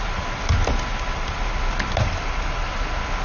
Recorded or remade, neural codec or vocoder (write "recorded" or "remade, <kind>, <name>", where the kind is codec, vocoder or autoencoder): recorded